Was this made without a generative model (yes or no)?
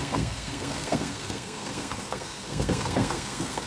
no